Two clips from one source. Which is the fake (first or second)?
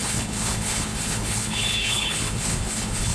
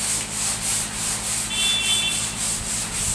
first